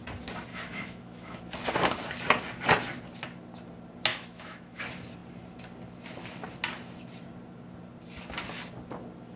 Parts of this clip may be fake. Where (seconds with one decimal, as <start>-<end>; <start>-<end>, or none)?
0.5-1.4; 4.1-4.8